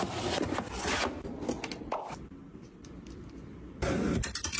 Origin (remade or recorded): remade